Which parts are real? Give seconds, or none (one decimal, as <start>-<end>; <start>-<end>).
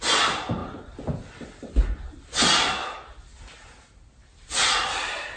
0.0-5.4